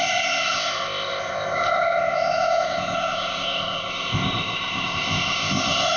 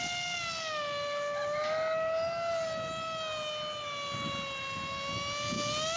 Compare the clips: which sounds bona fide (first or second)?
second